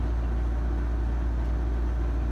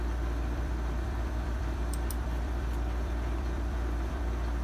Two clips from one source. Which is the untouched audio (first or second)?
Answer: first